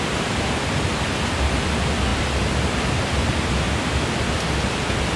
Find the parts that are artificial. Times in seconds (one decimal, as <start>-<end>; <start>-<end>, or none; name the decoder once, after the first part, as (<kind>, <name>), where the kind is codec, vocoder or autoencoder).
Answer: none